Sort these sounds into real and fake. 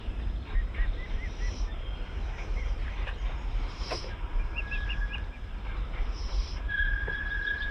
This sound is fake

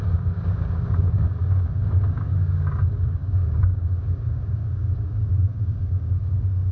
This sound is fake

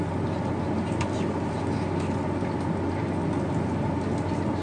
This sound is real